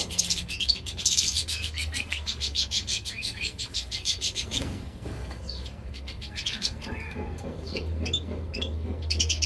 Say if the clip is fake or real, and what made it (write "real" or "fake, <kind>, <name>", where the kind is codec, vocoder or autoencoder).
fake, codec, SNAC